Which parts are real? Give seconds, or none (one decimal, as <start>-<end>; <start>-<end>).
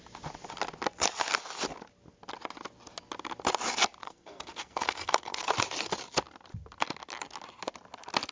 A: 0.0-4.0; 5.5-8.3